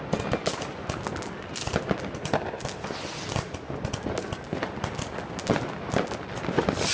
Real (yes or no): yes